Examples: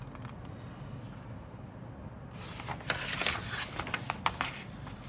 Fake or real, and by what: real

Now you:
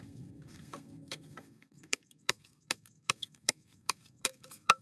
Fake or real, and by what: fake, codec, SNAC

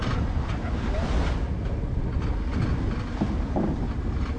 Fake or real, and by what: real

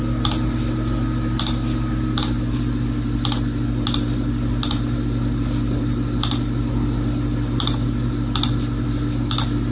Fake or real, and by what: real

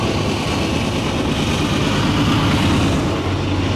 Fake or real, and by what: real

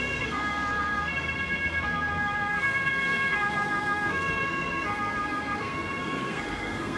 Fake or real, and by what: fake, codec, SNAC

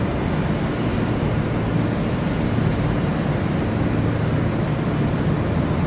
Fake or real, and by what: real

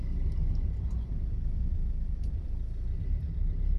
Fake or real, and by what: real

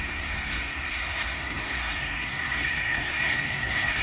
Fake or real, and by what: fake, codec, SNAC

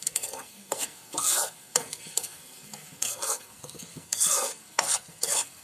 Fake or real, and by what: fake, codec, SNAC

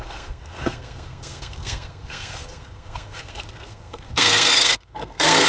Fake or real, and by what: fake, codec, SNAC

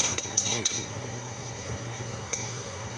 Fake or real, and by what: fake, codec, SNAC